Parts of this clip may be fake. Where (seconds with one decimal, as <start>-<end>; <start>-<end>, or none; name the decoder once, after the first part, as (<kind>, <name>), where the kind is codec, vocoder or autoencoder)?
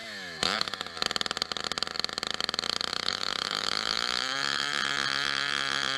0.0-0.7 (autoencoder, DAC-VAE); 2.9-4.8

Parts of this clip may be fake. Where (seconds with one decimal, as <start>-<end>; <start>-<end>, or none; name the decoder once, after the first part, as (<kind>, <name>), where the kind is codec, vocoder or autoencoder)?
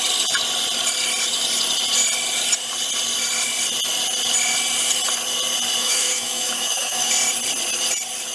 5.8-7.1 (autoencoder, DAC-VAE)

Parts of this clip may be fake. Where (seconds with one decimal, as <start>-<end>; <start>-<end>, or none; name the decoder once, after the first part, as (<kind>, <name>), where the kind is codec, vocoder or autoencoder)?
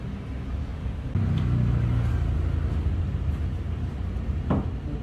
none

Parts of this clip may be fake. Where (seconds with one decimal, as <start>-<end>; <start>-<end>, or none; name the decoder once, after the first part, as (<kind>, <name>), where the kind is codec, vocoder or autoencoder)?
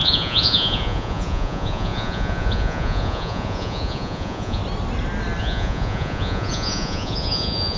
0.0-4.6 (vocoder, Vocos); 5.4-7.8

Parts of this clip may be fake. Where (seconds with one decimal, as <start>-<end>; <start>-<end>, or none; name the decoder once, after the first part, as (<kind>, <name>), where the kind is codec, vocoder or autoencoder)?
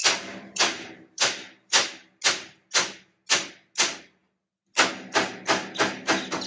0.0-1.9 (vocoder, BigVGAN v2)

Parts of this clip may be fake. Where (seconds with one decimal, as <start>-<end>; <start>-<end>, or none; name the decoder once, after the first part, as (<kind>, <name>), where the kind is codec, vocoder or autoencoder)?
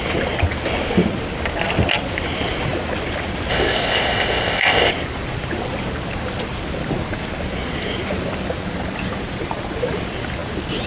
3.5-4.9 (codec, ZipCodec)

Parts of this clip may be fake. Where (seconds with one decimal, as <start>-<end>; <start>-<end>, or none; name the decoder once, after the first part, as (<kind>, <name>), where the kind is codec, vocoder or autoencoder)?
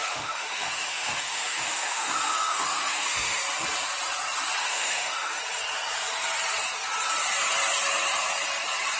0.0-3.4 (autoencoder, DAC-VAE); 4.6-5.4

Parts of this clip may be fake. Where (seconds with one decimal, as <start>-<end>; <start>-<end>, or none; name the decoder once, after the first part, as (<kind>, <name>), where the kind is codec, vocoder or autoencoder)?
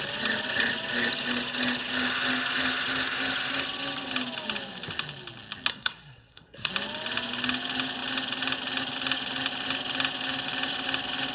5.7-6.7 (codec, SNAC)